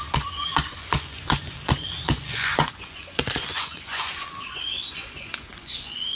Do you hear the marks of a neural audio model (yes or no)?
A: yes